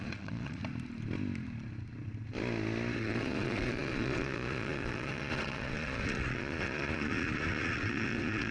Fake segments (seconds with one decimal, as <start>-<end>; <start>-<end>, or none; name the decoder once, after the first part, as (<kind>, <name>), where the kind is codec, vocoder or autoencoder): 0.0-0.6 (vocoder, Vocos); 3.0-8.5